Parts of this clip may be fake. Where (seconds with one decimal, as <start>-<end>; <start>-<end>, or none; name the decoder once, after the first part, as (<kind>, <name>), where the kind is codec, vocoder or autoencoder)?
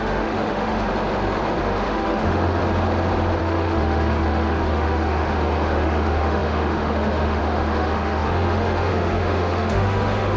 0.0-0.9 (autoencoder, DAC-VAE); 1.6-2.6; 3.4-10.4